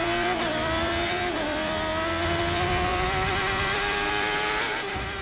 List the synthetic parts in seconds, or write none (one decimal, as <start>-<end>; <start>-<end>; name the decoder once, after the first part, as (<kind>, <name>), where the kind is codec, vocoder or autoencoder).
0.0-1.9 (vocoder, BigVGAN v2); 2.4-5.2